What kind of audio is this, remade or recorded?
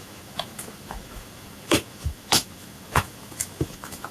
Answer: remade